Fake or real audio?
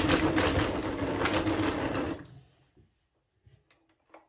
real